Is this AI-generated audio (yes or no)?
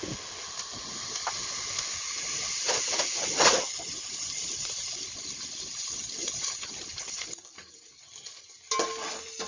no